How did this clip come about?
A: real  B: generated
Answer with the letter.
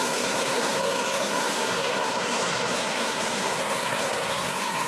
B